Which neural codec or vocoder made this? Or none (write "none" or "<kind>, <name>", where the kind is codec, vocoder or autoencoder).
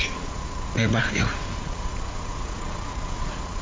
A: vocoder, Vocos